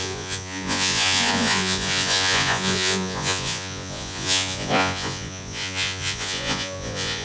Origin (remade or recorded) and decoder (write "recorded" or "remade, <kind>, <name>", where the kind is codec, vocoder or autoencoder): remade, vocoder, Vocos